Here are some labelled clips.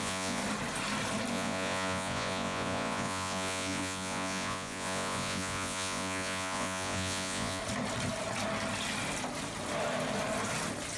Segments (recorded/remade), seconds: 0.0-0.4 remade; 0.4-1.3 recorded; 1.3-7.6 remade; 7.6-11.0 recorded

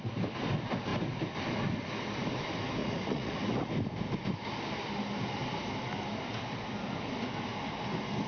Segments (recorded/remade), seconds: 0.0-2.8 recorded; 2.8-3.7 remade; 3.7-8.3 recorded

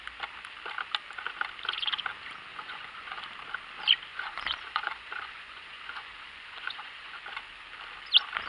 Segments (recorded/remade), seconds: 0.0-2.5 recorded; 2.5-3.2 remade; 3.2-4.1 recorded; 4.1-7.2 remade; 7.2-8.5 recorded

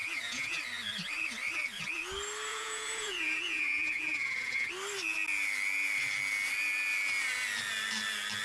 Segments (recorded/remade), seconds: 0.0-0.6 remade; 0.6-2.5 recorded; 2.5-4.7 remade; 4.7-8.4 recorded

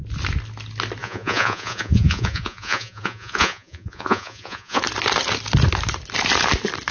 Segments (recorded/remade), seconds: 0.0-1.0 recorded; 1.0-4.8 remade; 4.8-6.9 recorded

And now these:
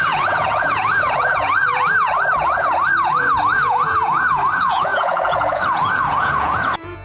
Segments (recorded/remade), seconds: 0.0-7.0 remade

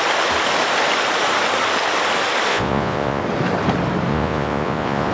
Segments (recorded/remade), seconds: 0.0-2.5 recorded; 2.5-3.2 remade; 3.2-4.1 recorded; 4.1-5.1 remade